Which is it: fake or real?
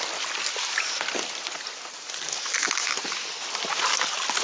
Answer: real